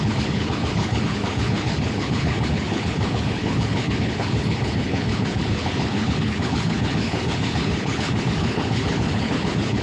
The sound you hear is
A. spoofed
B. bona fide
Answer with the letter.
A